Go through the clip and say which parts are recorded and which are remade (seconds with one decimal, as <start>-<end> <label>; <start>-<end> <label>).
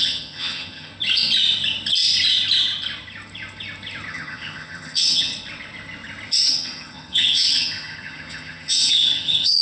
0.0-0.9 remade; 0.9-4.1 recorded; 4.1-5.3 remade; 5.3-6.5 recorded; 6.5-9.6 remade